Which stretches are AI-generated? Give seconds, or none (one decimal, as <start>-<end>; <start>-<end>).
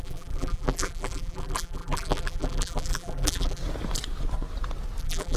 0.0-3.6; 5.0-5.4